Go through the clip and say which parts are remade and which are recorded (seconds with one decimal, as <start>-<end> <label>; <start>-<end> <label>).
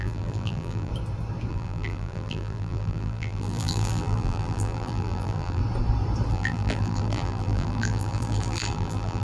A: 0.0-0.9 remade; 0.9-1.5 recorded; 1.5-5.6 remade; 5.6-6.3 recorded; 6.3-9.2 remade